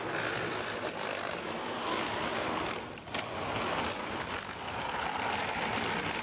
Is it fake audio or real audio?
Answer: real